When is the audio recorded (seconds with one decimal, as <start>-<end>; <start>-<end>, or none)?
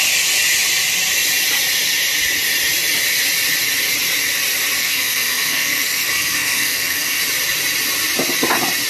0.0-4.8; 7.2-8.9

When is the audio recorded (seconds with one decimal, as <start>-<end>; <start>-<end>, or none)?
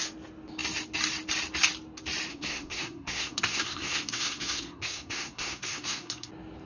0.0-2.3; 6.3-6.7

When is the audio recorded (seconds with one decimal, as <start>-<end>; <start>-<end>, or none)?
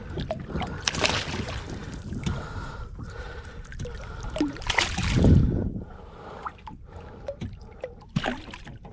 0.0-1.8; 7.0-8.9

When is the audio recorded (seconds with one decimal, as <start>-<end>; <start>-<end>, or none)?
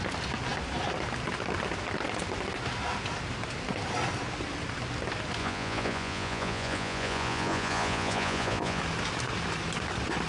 0.0-5.4; 8.8-10.3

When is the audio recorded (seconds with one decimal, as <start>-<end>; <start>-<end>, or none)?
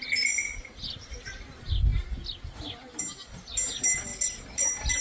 0.0-5.0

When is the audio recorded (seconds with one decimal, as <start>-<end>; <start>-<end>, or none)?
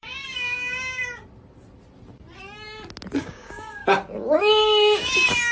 1.0-3.2; 3.8-4.4